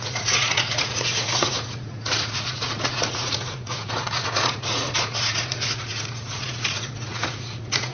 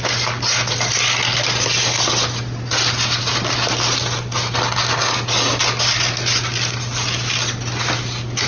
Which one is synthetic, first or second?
first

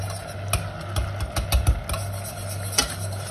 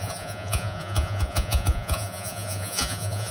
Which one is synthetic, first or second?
second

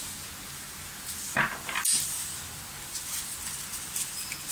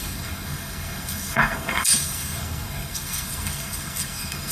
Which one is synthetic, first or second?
second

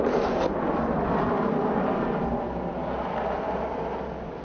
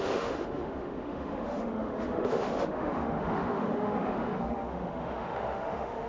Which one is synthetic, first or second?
second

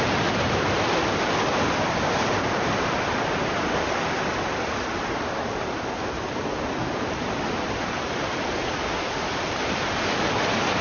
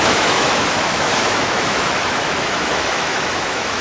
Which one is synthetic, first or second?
second